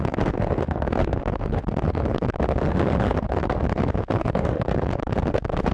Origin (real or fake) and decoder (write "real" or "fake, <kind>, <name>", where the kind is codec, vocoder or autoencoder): fake, autoencoder, DAC-VAE